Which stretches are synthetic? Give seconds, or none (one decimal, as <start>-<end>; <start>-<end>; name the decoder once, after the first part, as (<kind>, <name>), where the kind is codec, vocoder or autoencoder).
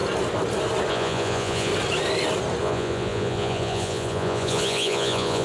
0.9-1.7 (vocoder, Vocos); 2.6-5.4